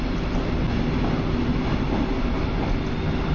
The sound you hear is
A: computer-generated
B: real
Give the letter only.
B